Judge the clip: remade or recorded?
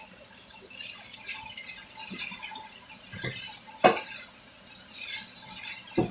recorded